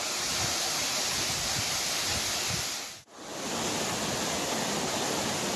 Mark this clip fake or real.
real